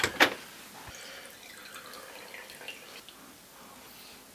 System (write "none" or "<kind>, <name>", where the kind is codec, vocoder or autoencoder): none